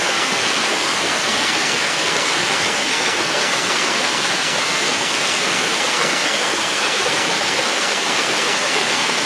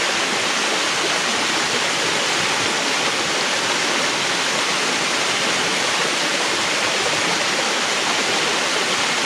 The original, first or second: second